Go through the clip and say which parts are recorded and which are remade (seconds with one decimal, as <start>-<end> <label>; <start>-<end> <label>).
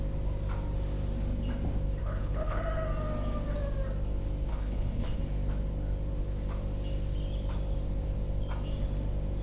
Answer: 0.0-2.0 recorded; 2.0-2.6 remade; 2.6-4.5 recorded; 4.5-5.2 remade; 5.2-9.4 recorded